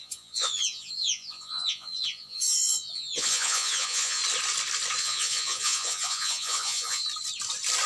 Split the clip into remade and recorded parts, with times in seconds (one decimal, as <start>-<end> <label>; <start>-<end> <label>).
0.0-4.2 remade; 4.2-5.0 recorded; 5.0-7.0 remade; 7.0-7.9 recorded